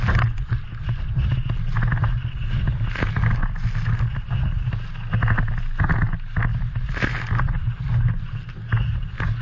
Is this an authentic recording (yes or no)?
yes